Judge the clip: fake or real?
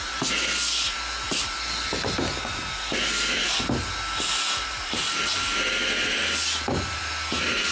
real